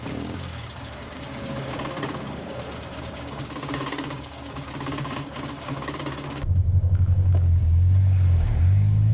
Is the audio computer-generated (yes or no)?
yes